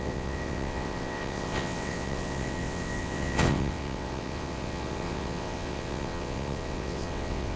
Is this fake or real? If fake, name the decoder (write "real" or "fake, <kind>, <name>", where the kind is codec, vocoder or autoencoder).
fake, vocoder, WaveNeXt